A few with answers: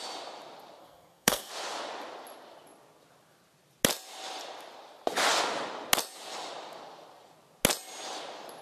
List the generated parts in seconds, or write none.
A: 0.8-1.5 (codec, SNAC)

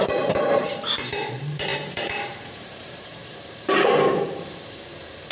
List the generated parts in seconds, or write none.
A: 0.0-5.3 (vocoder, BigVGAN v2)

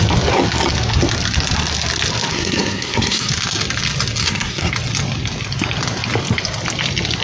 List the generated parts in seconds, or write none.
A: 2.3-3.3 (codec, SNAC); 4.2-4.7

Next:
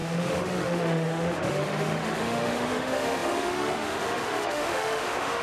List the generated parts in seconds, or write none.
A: 0.0-5.4 (autoencoder, DAC-VAE)